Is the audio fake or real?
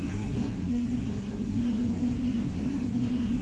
fake